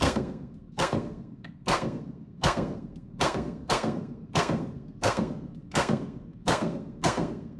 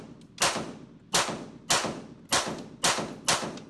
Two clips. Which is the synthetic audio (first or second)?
first